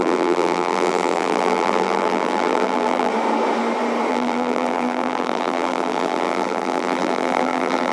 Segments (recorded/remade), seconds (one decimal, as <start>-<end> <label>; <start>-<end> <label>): 0.0-3.1 remade; 3.1-4.1 recorded; 4.1-7.9 remade